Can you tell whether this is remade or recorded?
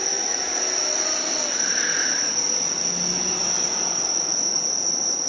recorded